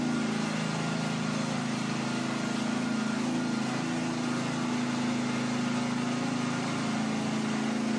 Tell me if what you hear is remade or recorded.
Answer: recorded